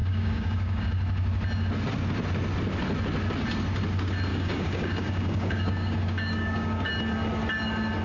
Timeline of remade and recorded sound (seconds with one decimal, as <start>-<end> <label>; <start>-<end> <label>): 0.0-0.9 remade; 0.9-4.3 recorded; 4.3-6.9 remade; 6.9-8.0 recorded